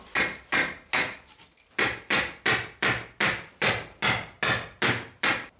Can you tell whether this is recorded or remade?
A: recorded